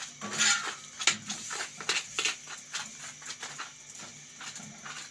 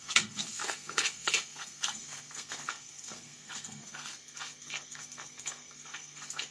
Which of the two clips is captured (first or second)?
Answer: first